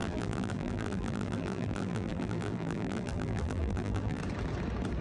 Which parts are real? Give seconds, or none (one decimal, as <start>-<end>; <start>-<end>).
4.2-5.0